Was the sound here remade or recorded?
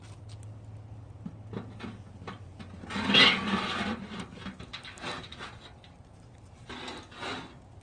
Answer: recorded